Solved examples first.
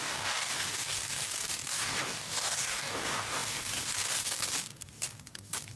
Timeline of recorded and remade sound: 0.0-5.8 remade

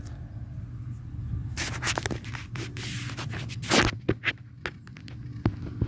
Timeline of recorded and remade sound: 0.0-5.9 recorded

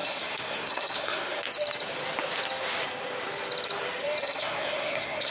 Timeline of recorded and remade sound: 0.0-1.4 remade; 1.4-4.2 recorded; 4.2-5.3 remade

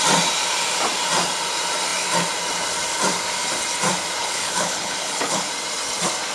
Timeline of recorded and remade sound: 0.0-4.2 recorded; 4.2-5.5 remade; 5.5-6.3 recorded

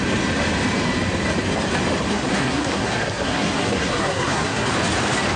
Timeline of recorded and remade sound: 0.0-2.1 recorded; 2.1-4.7 remade; 4.7-5.4 recorded

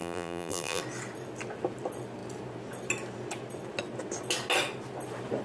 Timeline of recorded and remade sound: 0.0-0.8 remade; 0.8-5.4 recorded

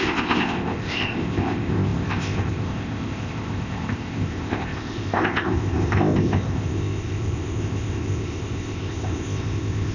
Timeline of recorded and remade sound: 0.0-9.9 remade